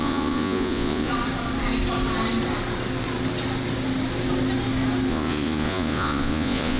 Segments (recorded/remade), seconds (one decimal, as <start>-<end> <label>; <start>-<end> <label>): 0.0-1.1 remade; 1.1-5.1 recorded; 5.1-6.8 remade